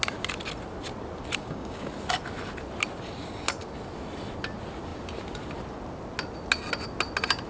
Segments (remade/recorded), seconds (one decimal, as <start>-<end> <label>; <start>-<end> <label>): 0.0-1.4 recorded; 1.4-1.9 remade; 1.9-7.5 recorded